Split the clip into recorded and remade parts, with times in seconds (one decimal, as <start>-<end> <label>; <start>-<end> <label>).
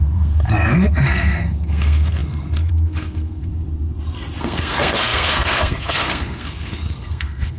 0.0-3.5 remade; 3.5-4.4 recorded; 4.4-7.6 remade